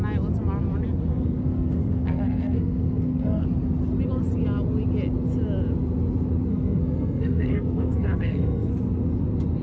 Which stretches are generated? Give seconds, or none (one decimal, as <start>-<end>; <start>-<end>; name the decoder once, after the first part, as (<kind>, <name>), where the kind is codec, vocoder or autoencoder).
1.1-3.4 (codec, SNAC); 6.5-8.7